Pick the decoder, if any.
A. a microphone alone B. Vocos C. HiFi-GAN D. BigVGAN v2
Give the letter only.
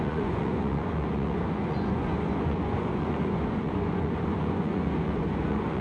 B